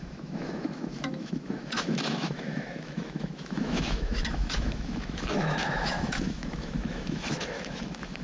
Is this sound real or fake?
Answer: fake